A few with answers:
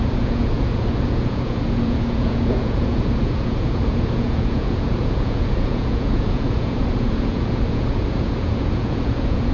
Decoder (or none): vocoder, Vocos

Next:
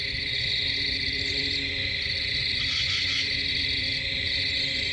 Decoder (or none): vocoder, Vocos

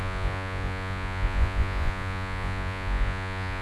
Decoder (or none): vocoder, Vocos